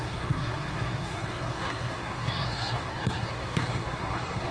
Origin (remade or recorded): remade